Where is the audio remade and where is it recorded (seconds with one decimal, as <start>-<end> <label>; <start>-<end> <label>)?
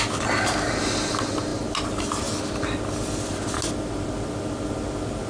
0.0-5.3 recorded